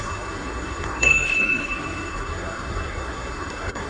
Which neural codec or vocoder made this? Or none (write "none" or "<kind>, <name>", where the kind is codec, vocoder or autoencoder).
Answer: codec, SNAC